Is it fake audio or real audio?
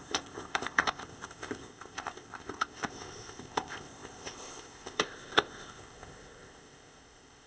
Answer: fake